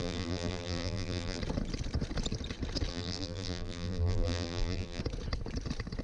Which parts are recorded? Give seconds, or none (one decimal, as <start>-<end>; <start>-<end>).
1.4-2.9; 5.0-6.0